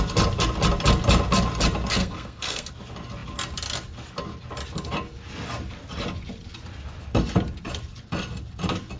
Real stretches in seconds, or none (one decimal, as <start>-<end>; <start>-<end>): 0.0-2.0; 2.7-9.0